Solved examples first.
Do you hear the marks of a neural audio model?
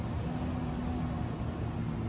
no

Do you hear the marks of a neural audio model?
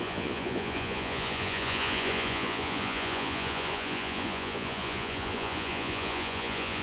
yes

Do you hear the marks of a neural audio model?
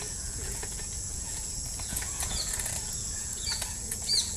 yes